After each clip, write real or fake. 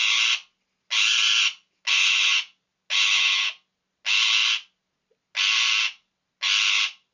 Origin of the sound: real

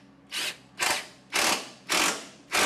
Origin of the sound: real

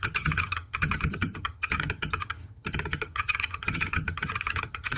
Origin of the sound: fake